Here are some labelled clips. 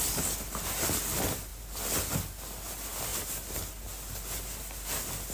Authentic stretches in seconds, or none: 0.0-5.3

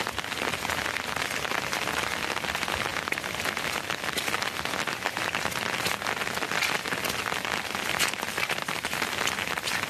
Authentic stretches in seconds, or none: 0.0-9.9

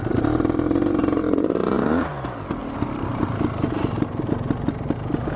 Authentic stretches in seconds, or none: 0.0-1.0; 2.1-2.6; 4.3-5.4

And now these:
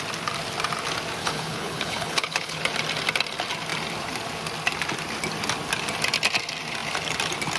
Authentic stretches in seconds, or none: 0.0-1.2; 2.6-7.6

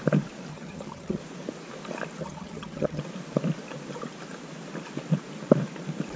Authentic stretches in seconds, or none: 0.0-0.5; 1.2-2.2; 3.0-6.2